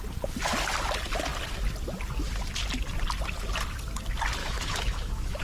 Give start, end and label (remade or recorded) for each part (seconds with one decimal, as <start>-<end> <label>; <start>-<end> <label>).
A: 0.0-4.4 recorded; 4.4-5.4 remade